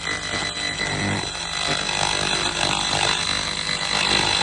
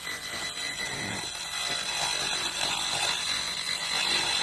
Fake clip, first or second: second